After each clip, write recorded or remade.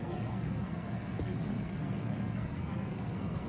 remade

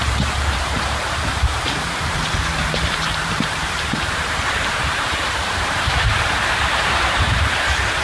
remade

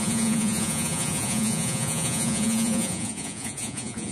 remade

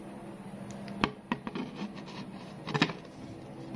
recorded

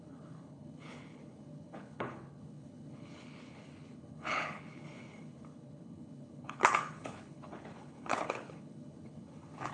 remade